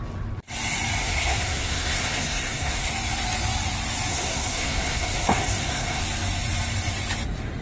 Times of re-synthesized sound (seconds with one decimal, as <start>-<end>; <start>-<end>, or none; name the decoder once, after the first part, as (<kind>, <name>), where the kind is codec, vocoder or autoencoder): 1.0-2.9 (codec, SNAC); 4.1-6.0